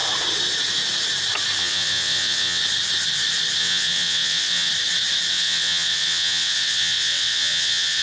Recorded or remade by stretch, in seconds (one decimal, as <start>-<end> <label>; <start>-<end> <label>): 0.0-1.6 recorded; 1.6-2.6 remade; 2.6-3.6 recorded; 3.6-4.7 remade; 4.7-5.3 recorded; 5.3-8.0 remade